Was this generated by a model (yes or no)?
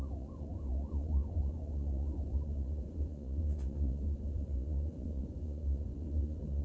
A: yes